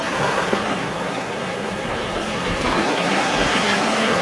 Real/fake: fake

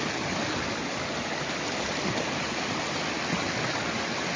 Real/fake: real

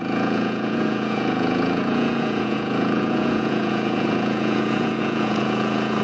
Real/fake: fake